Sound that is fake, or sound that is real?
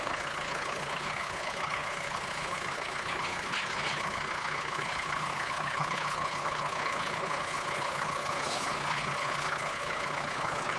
fake